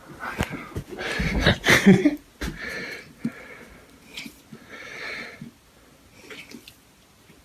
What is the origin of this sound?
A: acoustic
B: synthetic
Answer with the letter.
A